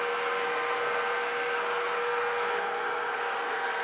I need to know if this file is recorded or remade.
remade